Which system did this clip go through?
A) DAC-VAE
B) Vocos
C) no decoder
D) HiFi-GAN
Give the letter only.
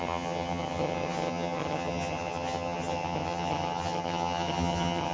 D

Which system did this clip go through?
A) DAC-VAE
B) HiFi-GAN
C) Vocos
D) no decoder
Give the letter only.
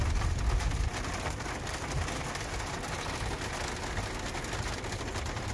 D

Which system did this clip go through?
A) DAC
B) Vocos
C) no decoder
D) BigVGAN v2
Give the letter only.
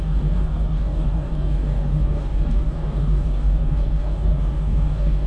A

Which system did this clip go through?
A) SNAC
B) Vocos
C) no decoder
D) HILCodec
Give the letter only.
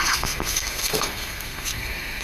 A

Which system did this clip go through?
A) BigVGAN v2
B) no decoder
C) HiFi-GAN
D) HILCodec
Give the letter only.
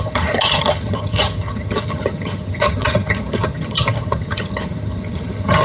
C